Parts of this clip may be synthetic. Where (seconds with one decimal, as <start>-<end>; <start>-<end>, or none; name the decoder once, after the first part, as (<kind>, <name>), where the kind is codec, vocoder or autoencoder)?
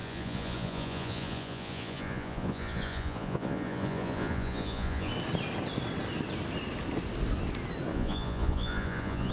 0.0-5.1 (vocoder, Vocos); 7.9-9.3